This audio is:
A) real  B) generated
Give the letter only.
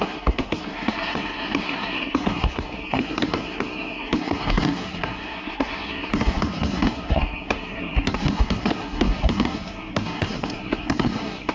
B